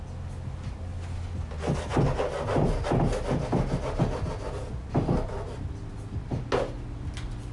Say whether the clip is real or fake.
real